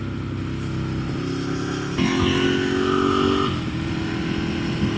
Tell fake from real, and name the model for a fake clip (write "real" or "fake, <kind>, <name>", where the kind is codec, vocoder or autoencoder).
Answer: real